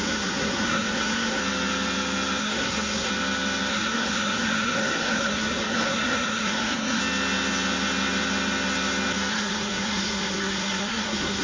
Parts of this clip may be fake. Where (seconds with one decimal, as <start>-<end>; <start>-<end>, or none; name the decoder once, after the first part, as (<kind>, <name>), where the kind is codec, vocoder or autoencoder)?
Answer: 0.0-1.4 (codec, SNAC); 2.4-3.1; 3.7-7.0; 9.3-11.4